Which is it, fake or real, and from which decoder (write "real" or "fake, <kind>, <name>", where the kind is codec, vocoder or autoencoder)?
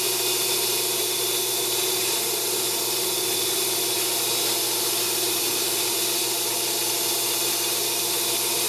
real